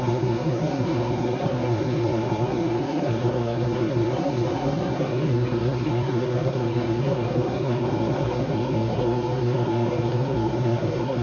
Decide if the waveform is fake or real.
fake